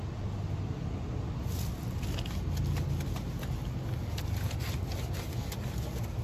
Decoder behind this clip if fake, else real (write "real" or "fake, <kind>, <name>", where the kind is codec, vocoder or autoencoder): real